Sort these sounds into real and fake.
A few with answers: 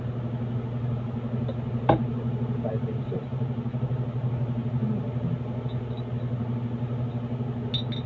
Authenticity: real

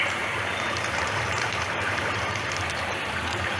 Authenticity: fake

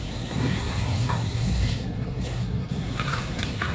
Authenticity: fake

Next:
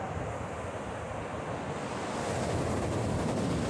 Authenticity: real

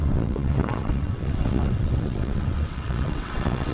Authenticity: fake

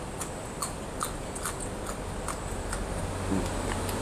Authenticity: real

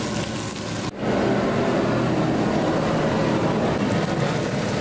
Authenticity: real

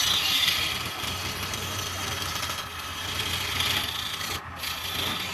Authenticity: real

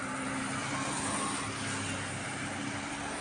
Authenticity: real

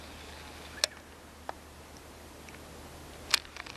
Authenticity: real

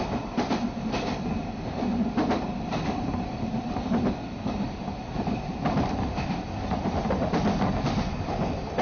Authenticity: fake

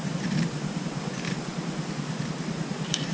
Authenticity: fake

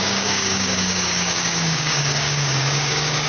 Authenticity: fake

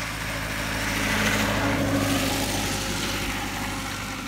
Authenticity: real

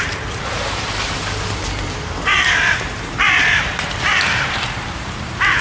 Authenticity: fake